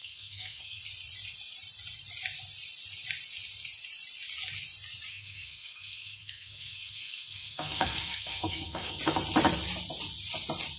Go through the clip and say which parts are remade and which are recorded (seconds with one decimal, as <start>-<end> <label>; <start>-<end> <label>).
0.0-0.8 remade; 0.8-5.1 recorded; 5.1-9.0 remade; 9.0-10.8 recorded